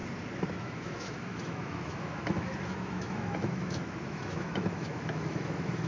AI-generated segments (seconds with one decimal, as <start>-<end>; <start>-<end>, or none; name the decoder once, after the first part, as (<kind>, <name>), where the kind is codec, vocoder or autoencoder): 0.6-5.9 (autoencoder, DAC-VAE)